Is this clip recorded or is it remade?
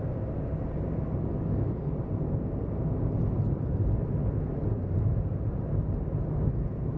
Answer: recorded